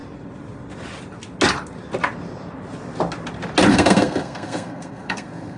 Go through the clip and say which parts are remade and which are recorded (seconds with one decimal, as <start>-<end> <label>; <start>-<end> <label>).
0.0-3.7 recorded; 3.7-5.6 remade